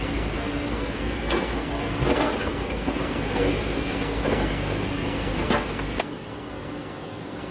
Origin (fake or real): fake